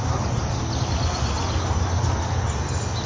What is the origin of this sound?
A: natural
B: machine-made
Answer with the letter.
A